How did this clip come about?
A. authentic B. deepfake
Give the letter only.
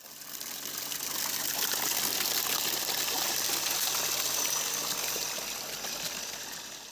A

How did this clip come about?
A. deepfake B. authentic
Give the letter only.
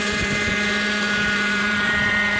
A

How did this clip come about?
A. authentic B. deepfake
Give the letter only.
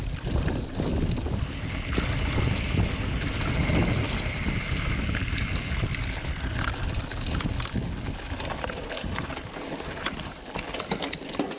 A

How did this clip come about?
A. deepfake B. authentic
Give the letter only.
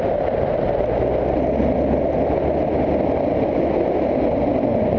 B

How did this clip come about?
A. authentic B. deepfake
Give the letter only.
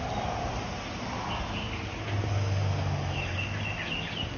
A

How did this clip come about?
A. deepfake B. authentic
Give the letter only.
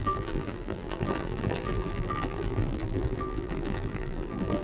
A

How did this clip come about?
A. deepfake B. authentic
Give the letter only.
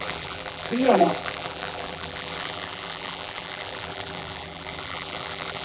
A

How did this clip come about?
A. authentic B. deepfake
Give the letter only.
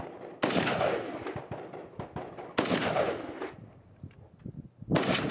A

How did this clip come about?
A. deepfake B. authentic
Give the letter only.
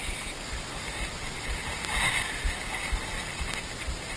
B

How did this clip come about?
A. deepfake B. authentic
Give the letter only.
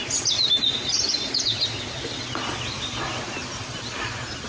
B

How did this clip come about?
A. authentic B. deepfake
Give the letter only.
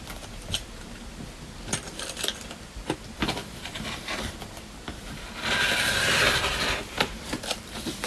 B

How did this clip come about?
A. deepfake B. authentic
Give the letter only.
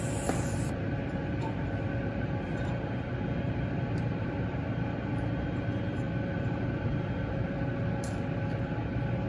A